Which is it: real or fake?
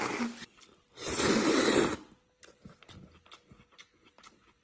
real